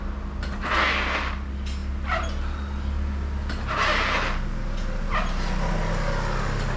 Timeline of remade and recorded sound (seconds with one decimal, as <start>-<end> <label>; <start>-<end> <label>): 0.0-6.8 recorded